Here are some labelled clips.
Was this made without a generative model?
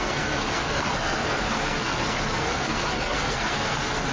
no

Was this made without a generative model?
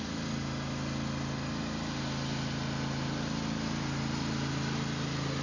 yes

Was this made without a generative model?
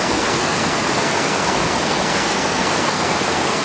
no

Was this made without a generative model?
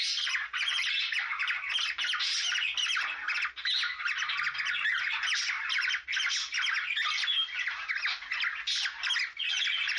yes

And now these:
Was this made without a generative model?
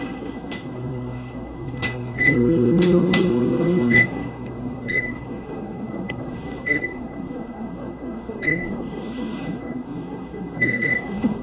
no